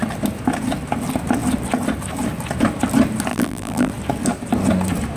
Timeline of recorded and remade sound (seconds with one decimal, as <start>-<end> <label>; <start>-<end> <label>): 0.0-3.3 recorded; 3.3-3.9 remade; 3.9-5.2 recorded